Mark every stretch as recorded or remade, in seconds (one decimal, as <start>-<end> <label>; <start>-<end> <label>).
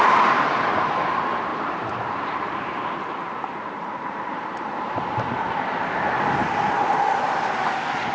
0.0-1.5 recorded; 1.5-6.2 remade; 6.2-8.1 recorded